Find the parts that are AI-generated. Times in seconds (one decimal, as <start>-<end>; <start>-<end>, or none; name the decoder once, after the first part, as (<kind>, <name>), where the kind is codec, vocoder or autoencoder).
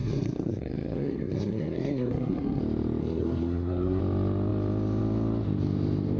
0.0-2.6 (codec, SNAC); 3.0-4.0